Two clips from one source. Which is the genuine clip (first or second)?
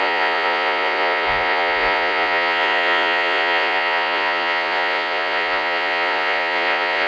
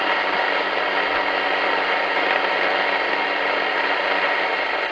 second